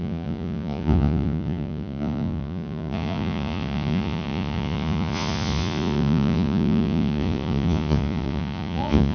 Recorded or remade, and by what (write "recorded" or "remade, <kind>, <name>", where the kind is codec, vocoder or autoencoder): remade, vocoder, Vocos